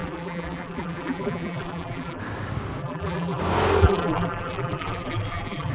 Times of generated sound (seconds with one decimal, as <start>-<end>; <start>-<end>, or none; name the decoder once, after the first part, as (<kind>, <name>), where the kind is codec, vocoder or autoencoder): 0.0-2.2 (vocoder, BigVGAN v2); 2.8-3.4; 3.8-5.7